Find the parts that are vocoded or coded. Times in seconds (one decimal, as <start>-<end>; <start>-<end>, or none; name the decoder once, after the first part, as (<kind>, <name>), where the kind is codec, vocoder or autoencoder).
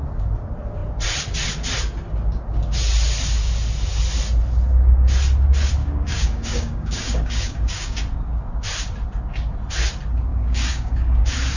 5.8-8.0 (codec, DAC); 10.3-11.2